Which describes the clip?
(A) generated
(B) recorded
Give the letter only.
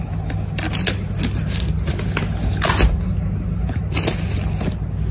B